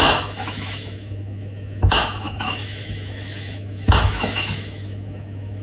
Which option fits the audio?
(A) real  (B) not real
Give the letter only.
B